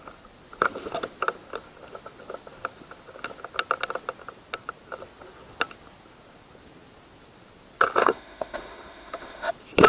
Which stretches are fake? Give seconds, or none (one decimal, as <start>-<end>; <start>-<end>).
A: 8.0-9.5